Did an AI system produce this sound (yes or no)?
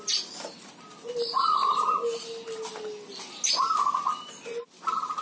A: no